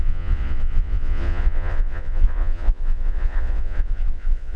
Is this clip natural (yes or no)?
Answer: no